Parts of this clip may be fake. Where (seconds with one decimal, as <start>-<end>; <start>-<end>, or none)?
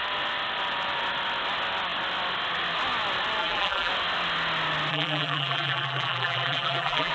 3.4-3.9; 4.9-7.1